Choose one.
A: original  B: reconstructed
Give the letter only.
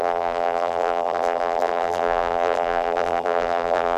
B